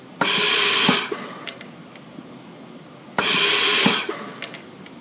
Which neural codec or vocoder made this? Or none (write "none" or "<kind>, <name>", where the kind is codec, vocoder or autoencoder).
none